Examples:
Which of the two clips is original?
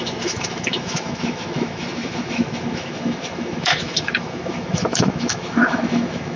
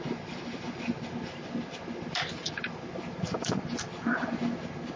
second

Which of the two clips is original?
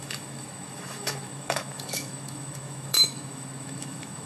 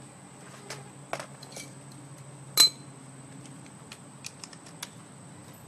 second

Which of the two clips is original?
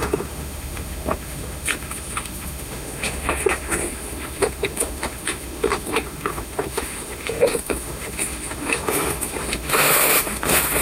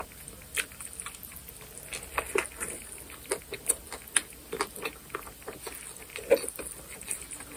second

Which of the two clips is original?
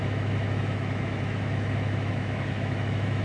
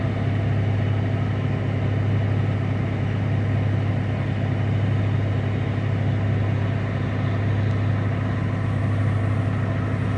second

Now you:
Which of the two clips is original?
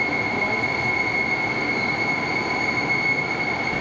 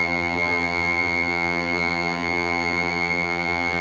first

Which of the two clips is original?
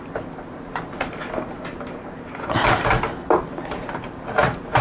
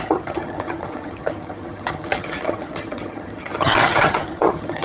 first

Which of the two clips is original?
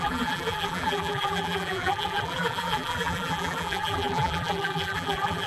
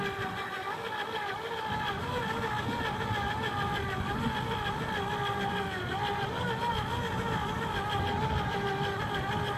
second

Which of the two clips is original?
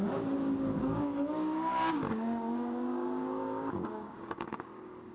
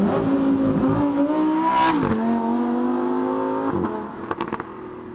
second